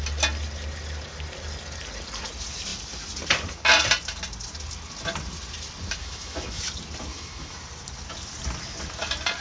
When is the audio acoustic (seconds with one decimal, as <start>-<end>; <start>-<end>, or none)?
0.0-6.0; 6.6-7.1; 7.6-9.4